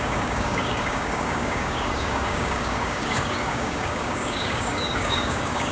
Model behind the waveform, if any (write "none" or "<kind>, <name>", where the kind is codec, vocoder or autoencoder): codec, DAC